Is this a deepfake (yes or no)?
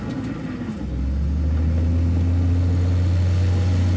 no